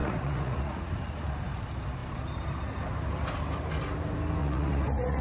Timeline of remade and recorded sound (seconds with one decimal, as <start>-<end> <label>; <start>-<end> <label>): 0.0-0.9 remade; 0.9-4.4 recorded; 4.4-5.2 remade